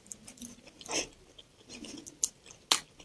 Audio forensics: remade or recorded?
recorded